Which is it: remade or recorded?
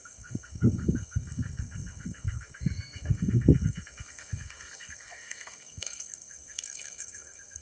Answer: remade